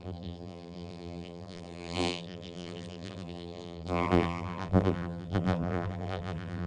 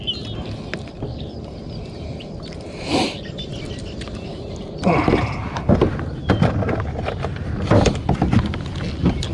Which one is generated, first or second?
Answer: first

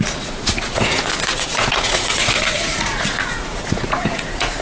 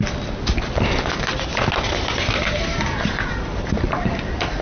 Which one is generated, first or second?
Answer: first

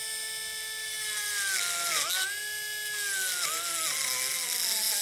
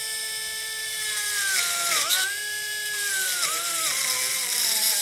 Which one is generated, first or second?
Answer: second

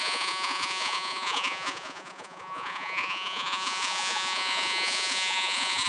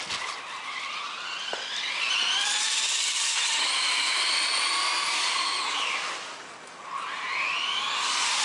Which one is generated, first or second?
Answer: first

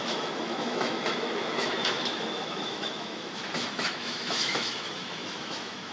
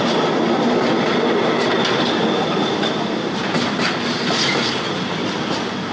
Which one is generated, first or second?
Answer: first